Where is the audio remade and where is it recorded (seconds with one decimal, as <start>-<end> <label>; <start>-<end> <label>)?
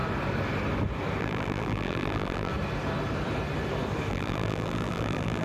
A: 0.0-1.2 recorded; 1.2-2.5 remade; 2.5-4.1 recorded; 4.1-5.4 remade